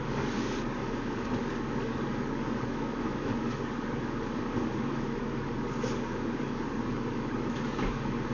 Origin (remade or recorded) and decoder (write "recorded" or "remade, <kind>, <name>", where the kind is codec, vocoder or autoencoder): remade, codec, DAC